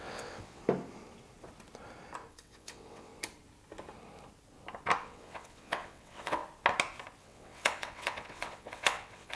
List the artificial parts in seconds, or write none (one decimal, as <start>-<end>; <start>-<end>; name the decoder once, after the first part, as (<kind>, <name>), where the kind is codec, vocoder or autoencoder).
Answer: 0.0-0.6 (vocoder, WaveNeXt); 2.3-3.1; 5.0-6.4; 7.2-9.4